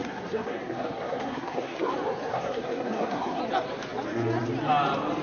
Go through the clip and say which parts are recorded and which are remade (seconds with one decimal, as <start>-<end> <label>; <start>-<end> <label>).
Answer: 0.0-1.9 remade; 1.9-2.3 recorded; 2.3-3.4 remade; 3.4-5.2 recorded